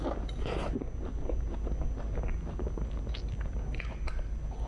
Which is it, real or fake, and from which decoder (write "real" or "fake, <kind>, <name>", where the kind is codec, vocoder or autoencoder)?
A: real